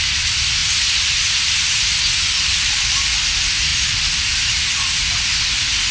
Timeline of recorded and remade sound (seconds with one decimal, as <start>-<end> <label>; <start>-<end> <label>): 0.0-5.9 recorded